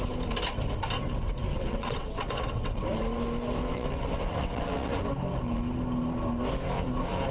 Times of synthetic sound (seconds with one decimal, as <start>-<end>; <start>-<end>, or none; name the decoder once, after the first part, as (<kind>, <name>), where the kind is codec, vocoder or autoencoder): 1.5-2.7 (vocoder, WaveNeXt); 3.7-4.9